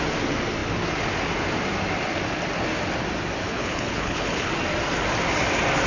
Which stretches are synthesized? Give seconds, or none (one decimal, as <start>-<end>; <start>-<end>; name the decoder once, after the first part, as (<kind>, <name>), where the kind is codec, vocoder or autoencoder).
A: 3.4-4.5 (codec, HILCodec)